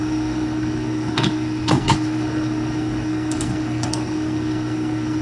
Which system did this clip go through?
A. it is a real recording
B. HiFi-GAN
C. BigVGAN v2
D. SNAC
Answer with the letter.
D